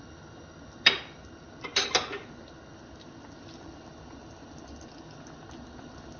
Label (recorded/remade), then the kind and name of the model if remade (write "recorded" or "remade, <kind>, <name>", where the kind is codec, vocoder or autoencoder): recorded